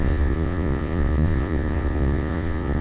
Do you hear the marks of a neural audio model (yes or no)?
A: yes